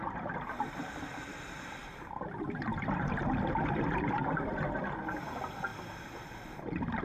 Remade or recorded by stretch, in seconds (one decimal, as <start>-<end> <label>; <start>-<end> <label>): 0.0-5.7 remade; 5.7-7.0 recorded